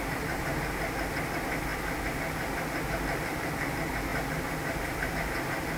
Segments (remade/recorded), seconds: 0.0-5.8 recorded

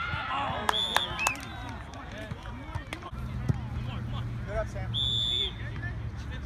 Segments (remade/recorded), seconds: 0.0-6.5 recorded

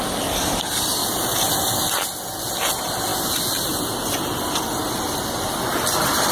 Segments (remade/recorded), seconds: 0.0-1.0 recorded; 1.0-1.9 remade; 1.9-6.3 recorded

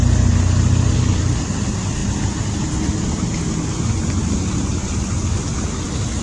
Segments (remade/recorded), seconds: 0.0-6.2 recorded